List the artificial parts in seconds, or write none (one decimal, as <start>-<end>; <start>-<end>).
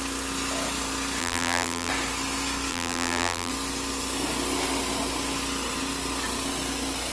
1.2-1.9; 2.7-3.5